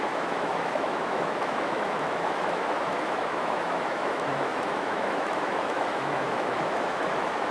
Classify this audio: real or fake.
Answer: fake